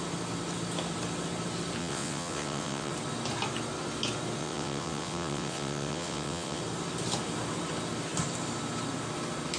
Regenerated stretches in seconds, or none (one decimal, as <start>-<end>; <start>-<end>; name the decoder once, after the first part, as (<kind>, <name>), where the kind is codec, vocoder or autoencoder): 1.8-2.9 (vocoder, WaveNeXt); 4.4-6.6